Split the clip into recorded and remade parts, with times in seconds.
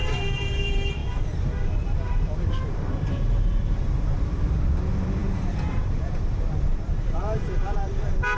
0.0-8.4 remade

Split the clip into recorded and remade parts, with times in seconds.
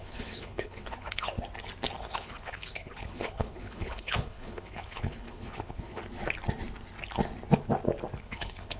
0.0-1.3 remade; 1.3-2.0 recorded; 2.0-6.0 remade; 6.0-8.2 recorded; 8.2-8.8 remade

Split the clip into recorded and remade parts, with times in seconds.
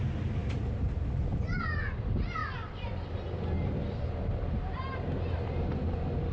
0.0-6.3 recorded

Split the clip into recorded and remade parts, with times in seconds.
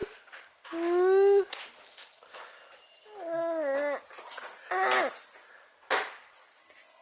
0.0-7.0 recorded